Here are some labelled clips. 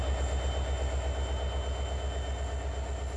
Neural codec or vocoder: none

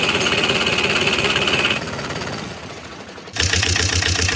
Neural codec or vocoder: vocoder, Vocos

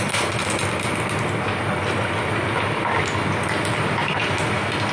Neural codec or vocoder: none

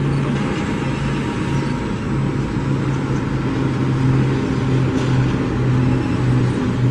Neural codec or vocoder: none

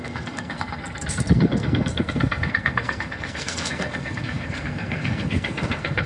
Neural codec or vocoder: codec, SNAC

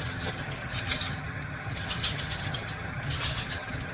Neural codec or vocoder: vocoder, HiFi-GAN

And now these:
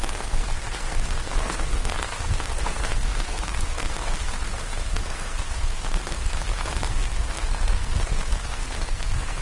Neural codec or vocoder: codec, SNAC